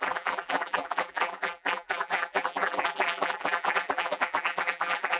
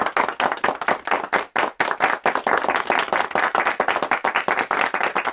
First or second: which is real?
second